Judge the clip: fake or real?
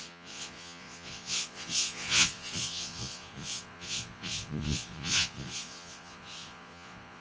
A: fake